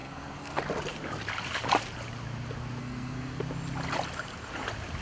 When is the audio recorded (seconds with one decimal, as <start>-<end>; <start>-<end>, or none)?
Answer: 0.6-2.8; 3.4-5.0